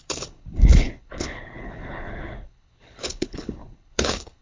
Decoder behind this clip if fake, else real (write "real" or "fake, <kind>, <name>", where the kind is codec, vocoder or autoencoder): fake, codec, HILCodec